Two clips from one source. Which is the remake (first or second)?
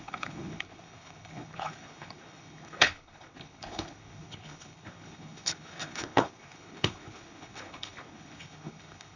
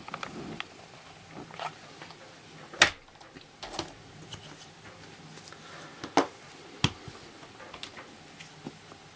first